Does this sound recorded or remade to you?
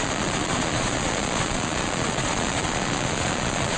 remade